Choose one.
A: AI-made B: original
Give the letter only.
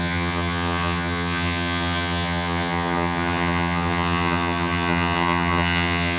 A